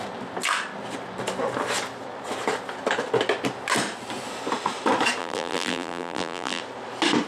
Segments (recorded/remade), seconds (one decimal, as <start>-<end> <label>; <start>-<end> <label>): 0.0-5.2 recorded; 5.2-6.6 remade; 6.6-7.3 recorded